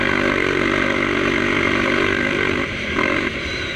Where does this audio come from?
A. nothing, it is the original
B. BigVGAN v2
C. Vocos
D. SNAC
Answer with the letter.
B